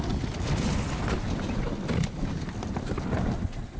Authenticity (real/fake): real